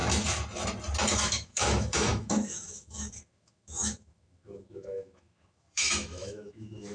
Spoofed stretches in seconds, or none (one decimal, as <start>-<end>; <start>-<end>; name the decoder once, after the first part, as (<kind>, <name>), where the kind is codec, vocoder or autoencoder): 1.1-6.9 (autoencoder, DAC-VAE)